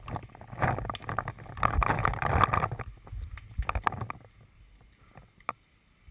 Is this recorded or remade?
recorded